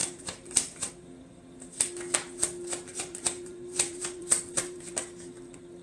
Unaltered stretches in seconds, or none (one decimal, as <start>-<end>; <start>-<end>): 0.9-2.9; 4.9-5.8